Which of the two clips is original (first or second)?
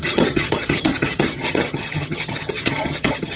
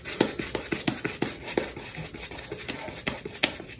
second